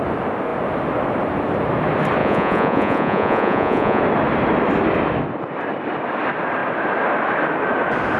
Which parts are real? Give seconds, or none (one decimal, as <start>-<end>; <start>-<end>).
0.0-2.2; 4.0-8.2